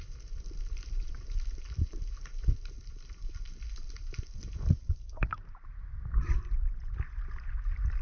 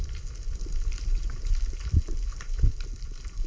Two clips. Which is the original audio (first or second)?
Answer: second